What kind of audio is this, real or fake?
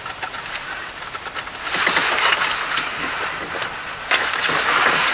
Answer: real